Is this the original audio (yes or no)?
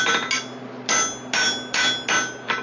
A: yes